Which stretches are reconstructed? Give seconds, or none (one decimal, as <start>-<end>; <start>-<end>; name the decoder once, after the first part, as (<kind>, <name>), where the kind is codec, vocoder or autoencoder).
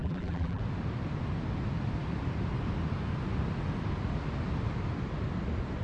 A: 0.0-0.6 (vocoder, BigVGAN v2)